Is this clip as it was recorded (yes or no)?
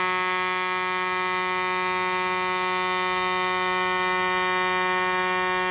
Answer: yes